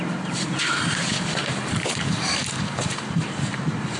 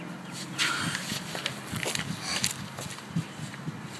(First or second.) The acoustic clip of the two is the second